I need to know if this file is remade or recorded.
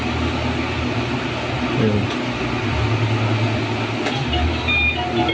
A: recorded